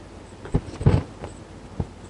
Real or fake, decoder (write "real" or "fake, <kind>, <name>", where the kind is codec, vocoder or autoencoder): real